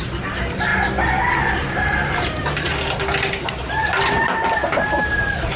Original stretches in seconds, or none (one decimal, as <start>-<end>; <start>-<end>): 0.0-5.6